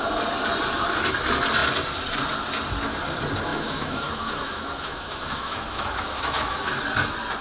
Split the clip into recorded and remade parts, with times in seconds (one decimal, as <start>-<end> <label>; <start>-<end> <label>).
0.0-3.5 recorded; 3.5-6.8 remade; 6.8-7.4 recorded